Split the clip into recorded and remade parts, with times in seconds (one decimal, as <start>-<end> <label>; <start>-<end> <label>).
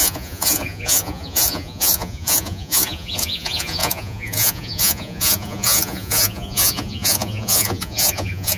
0.0-8.6 remade